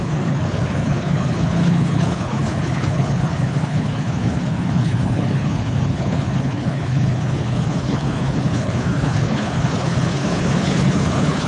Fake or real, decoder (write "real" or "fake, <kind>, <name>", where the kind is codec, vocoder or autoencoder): fake, codec, HILCodec